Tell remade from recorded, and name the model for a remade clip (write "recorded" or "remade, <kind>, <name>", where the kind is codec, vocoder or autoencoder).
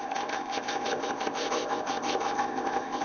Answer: remade, codec, ZipCodec